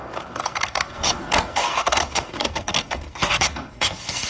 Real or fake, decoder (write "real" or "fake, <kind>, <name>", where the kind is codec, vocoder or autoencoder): fake, codec, SNAC